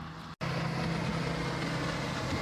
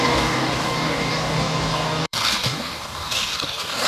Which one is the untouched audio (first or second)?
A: first